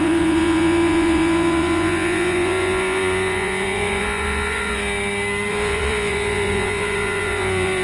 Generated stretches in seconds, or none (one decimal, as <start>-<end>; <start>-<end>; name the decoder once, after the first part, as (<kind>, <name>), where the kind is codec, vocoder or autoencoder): 0.0-4.8 (vocoder, Vocos); 5.5-7.8